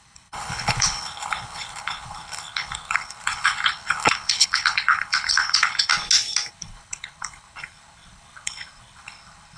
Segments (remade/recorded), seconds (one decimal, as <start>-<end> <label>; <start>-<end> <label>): 0.0-5.9 remade; 5.9-6.5 recorded; 6.5-9.6 remade